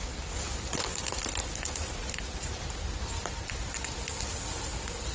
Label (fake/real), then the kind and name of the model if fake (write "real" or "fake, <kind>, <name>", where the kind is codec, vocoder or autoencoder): real